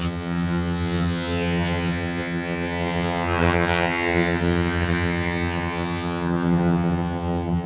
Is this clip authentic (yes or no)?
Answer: no